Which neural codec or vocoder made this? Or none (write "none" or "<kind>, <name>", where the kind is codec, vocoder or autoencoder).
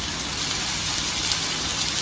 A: none